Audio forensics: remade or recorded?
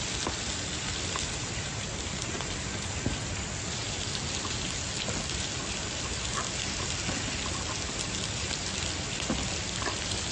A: recorded